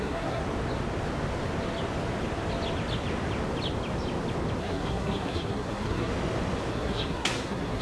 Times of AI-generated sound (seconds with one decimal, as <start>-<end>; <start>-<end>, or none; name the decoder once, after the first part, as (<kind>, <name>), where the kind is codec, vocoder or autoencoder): 0.0-0.4 (codec, SNAC); 4.6-6.1; 6.7-7.8